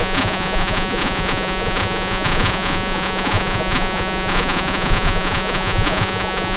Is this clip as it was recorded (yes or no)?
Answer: no